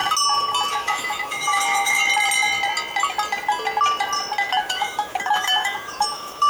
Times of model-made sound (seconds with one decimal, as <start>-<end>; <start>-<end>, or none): 0.7-2.0; 4.6-6.5